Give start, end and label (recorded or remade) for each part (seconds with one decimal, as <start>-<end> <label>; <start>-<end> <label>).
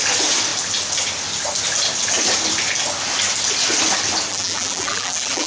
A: 0.0-4.3 recorded; 4.3-5.5 remade